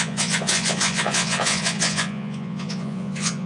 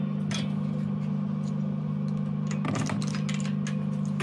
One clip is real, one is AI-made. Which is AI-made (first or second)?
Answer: first